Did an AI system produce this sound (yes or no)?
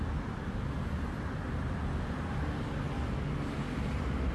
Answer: no